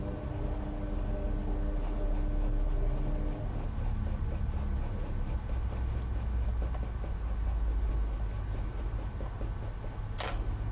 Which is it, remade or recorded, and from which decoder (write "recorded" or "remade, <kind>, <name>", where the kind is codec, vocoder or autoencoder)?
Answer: recorded